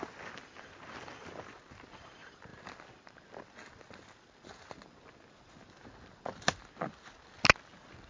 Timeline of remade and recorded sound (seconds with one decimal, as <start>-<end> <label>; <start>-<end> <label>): 0.0-8.1 recorded